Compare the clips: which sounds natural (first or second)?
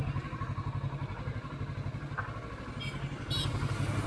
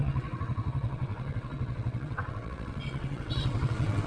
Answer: first